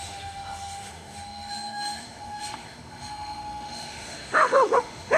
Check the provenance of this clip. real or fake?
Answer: fake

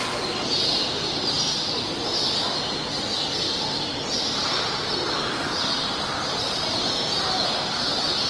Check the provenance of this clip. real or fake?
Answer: real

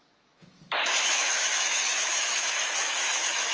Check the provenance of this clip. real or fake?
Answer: fake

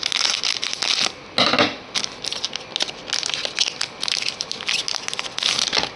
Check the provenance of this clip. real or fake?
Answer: real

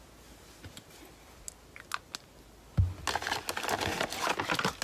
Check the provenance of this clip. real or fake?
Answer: real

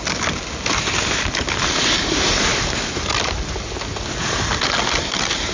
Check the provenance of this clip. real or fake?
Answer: real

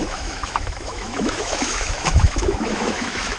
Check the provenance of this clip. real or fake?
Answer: fake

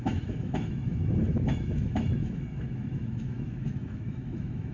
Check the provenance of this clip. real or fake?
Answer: fake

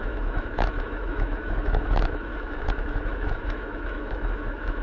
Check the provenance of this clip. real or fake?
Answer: fake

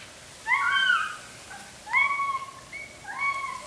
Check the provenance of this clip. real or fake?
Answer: real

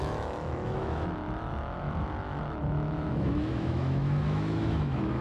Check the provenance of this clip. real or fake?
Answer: fake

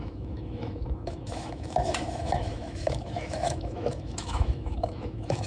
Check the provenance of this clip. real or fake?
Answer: fake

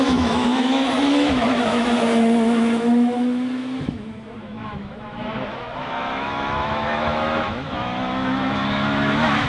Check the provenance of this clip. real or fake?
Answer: fake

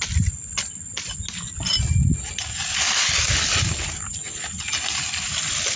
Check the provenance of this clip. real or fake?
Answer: real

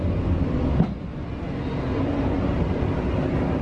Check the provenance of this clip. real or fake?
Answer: real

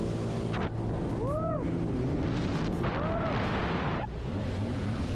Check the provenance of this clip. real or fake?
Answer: real